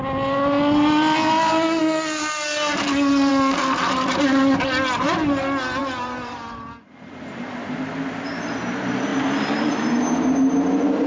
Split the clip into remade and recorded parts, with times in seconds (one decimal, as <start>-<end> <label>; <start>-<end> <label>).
0.0-5.8 recorded; 5.8-7.9 remade; 7.9-9.1 recorded; 9.1-9.7 remade; 9.7-11.1 recorded